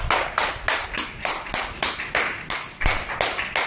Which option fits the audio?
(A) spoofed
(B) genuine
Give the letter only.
B